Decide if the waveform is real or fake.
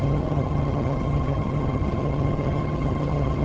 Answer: fake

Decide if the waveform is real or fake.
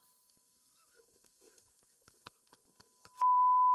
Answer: fake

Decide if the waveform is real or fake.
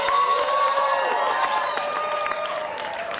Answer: fake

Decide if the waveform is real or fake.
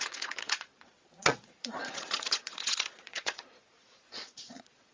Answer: fake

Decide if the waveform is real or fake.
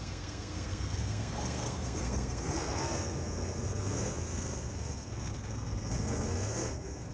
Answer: fake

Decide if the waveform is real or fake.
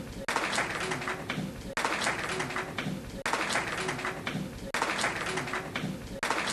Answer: real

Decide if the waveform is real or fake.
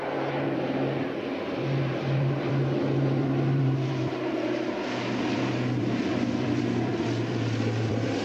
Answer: fake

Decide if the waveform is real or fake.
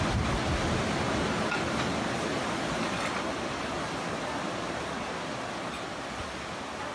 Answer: real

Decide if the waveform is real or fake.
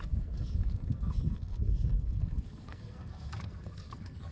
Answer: fake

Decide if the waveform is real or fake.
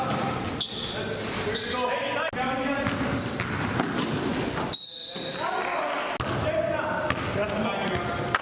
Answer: real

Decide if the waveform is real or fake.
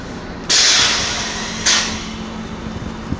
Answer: real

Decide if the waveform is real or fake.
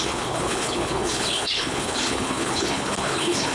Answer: fake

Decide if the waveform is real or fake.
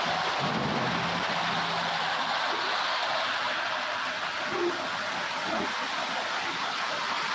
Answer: real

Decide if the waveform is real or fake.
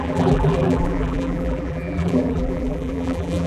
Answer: fake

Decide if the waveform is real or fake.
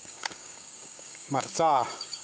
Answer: fake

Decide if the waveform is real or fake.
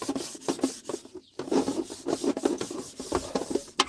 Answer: real